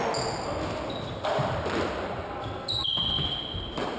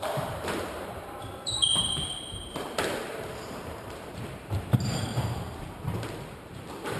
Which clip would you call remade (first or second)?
second